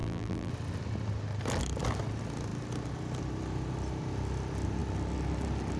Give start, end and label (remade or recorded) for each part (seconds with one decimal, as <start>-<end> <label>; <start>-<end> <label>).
0.0-0.5 remade; 0.5-5.8 recorded